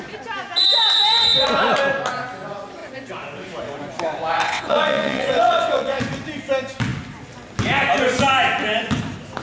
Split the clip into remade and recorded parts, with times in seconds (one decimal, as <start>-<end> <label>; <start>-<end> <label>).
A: 0.0-4.4 recorded; 4.4-6.0 remade; 6.0-9.4 recorded